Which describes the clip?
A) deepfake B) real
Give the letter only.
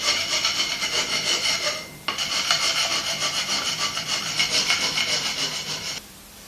A